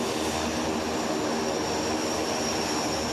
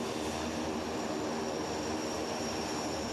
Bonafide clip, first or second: first